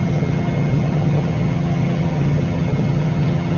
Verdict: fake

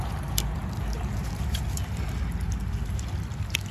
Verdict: real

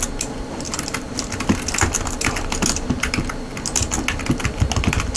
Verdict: real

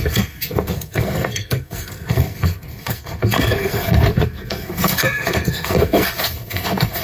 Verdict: fake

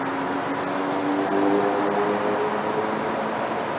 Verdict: real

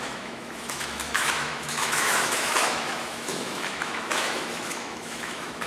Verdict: fake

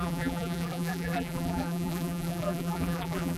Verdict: fake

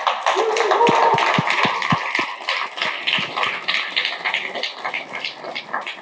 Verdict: real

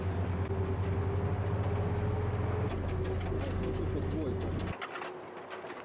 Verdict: real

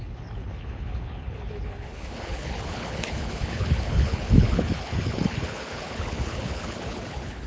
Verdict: fake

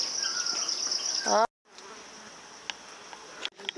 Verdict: real